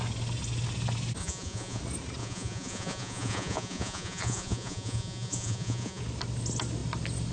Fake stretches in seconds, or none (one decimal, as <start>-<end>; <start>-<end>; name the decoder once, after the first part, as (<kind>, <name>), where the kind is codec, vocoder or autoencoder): 1.2-1.8 (vocoder, Vocos); 2.2-6.0

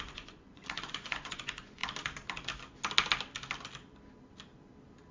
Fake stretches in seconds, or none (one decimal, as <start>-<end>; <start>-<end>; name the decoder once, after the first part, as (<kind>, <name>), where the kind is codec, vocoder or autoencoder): 0.0-1.8 (vocoder, Vocos)

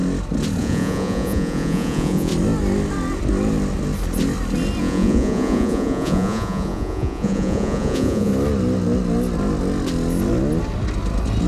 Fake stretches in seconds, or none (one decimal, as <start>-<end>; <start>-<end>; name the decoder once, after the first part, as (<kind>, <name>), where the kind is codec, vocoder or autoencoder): 0.6-2.3 (vocoder, Vocos); 4.8-8.3

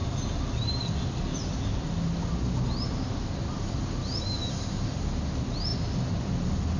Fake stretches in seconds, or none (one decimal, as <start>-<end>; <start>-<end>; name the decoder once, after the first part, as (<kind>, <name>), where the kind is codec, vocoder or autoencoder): none

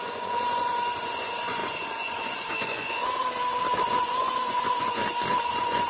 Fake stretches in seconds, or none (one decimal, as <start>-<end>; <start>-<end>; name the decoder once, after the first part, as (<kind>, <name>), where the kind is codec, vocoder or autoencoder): 0.0-3.2 (vocoder, Vocos); 3.8-5.0; 5.5-5.9

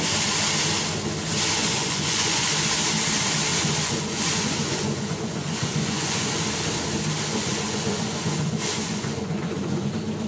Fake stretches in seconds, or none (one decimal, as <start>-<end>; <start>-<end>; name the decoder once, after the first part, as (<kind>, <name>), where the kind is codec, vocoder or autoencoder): 1.6-2.5 (vocoder, Vocos); 3.5-6.4; 7.3-9.9

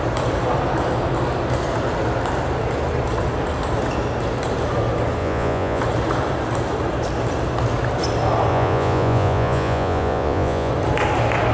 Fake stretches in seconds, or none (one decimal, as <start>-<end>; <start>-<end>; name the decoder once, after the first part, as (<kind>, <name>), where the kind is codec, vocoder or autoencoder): 5.2-5.8 (vocoder, Vocos); 8.5-10.7

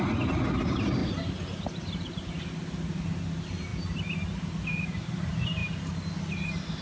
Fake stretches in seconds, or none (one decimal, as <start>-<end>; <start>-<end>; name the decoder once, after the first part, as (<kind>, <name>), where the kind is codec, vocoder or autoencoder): none